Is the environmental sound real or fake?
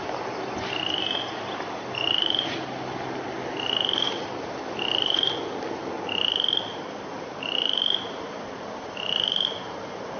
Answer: real